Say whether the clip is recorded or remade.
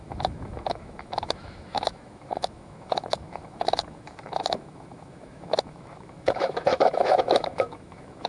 remade